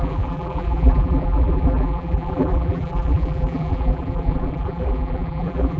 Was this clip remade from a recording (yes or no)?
yes